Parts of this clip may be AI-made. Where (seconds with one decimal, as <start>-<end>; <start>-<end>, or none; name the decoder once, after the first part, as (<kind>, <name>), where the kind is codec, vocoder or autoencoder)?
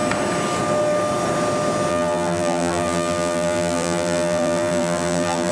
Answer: 1.9-5.5 (vocoder, BigVGAN v2)